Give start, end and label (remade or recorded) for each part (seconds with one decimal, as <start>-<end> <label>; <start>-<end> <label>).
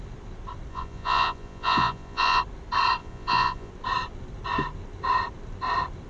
0.0-0.7 recorded; 0.7-2.4 remade; 2.4-3.0 recorded; 3.0-3.7 remade; 3.7-6.1 recorded